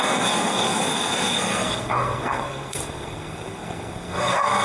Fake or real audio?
fake